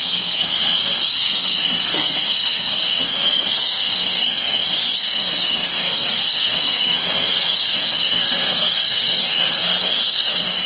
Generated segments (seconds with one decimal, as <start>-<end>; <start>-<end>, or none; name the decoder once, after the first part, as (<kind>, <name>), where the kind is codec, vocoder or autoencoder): 0.0-10.7 (codec, SNAC)